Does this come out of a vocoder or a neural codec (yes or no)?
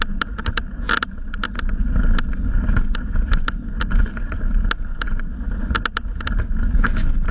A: no